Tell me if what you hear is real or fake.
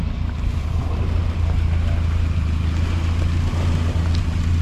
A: real